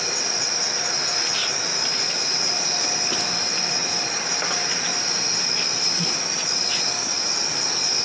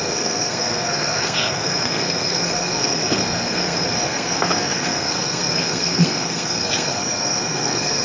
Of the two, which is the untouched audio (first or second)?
first